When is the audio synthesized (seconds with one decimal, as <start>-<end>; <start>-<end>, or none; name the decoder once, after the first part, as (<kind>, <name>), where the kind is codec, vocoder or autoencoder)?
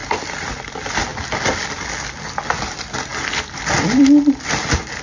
0.0-0.7 (vocoder, BigVGAN v2); 3.1-4.0